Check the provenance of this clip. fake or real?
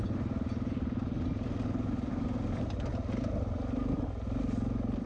real